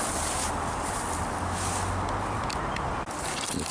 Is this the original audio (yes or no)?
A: yes